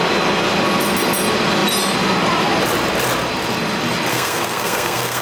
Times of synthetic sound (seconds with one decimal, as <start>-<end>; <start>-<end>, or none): 4.1-5.2